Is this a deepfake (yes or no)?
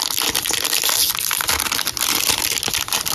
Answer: no